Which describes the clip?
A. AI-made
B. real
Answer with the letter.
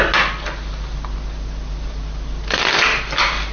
B